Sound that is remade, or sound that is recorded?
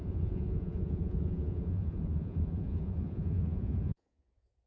remade